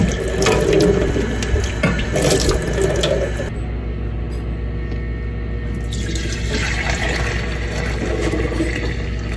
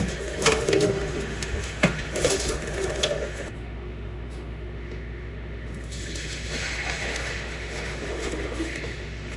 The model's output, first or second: second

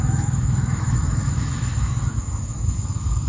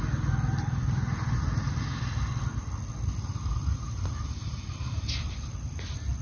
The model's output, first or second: first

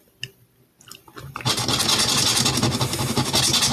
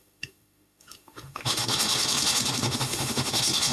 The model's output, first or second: second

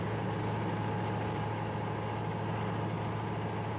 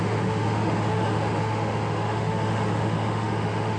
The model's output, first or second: second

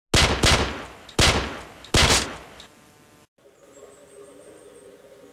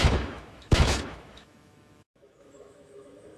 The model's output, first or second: second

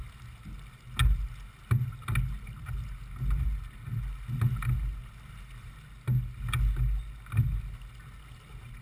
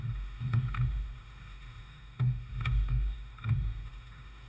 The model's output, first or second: second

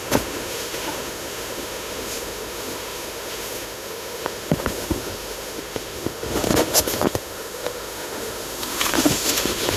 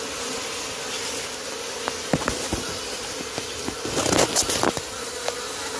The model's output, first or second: first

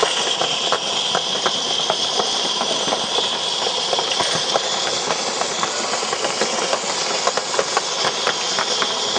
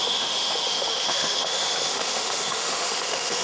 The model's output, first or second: second